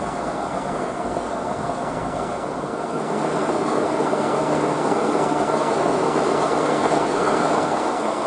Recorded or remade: remade